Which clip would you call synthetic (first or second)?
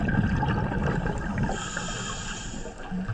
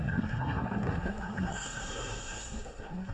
second